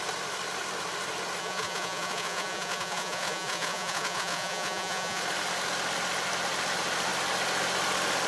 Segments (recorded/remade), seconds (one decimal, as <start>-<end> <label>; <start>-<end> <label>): 0.0-1.4 recorded; 1.4-5.2 remade; 5.2-8.3 recorded